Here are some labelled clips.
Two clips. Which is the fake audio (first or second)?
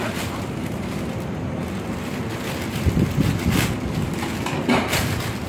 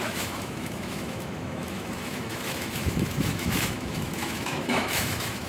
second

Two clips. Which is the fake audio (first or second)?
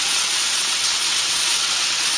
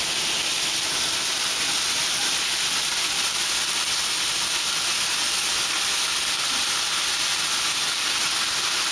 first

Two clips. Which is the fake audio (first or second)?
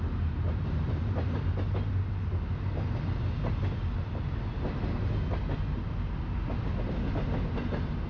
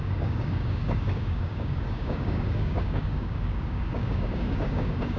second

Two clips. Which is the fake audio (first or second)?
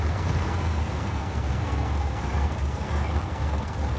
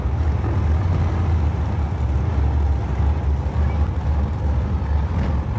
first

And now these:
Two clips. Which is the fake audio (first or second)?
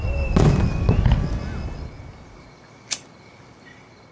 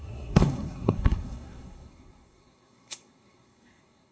second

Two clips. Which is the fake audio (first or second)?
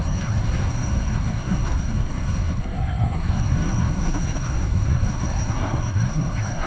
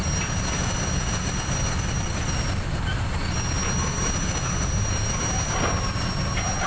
first